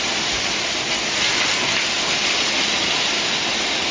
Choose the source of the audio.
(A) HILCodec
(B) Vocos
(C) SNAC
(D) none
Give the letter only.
D